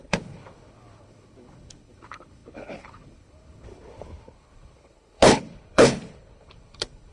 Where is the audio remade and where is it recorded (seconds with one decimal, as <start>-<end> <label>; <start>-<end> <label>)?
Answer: 0.0-7.1 remade